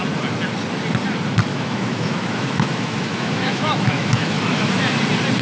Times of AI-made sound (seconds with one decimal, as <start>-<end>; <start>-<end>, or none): 1.5-4.7